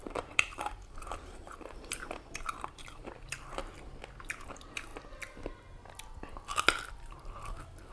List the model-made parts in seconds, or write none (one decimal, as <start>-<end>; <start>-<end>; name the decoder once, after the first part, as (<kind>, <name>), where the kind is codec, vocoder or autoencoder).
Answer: 0.0-3.6 (vocoder, BigVGAN v2); 4.3-4.9; 6.9-7.9